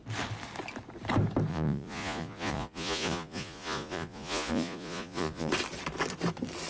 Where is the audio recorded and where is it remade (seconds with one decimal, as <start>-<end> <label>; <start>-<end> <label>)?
0.0-1.5 recorded; 1.5-5.5 remade; 5.5-6.7 recorded